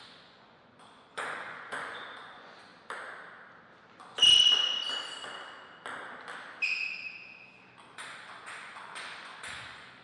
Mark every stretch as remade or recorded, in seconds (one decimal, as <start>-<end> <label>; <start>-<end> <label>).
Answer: 0.0-2.7 remade; 2.7-7.9 recorded; 7.9-10.0 remade